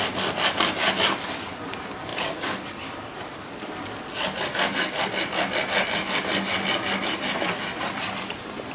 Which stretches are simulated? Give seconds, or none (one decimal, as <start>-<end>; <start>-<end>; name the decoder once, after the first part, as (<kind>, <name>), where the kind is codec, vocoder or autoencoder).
none